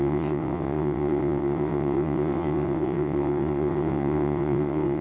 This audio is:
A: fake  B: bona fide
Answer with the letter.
A